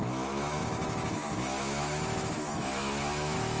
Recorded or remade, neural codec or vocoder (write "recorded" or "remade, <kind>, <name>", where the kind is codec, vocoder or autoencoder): remade, autoencoder, DAC-VAE